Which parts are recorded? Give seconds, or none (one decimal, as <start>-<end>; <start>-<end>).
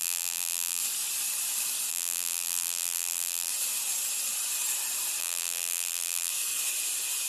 0.8-1.9; 3.5-5.2; 6.3-7.3